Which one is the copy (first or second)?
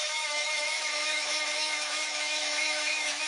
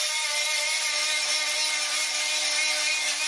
first